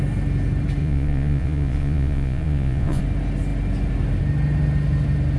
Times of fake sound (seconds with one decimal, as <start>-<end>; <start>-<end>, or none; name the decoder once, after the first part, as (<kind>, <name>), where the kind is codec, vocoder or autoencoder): 0.8-3.0 (vocoder, Vocos)